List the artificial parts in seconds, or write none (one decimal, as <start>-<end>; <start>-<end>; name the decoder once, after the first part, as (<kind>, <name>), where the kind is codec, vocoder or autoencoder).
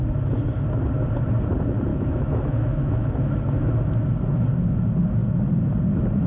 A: 1.9-3.1 (autoencoder, DAC-VAE)